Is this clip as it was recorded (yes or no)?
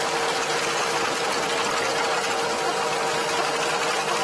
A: yes